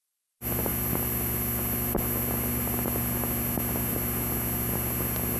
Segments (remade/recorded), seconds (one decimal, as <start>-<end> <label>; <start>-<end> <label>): 0.0-5.4 recorded